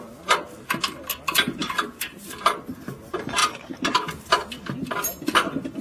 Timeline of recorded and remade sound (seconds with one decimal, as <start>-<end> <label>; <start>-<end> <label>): 0.0-1.6 recorded; 1.6-2.3 remade; 2.3-3.4 recorded; 3.4-4.3 remade; 4.3-5.8 recorded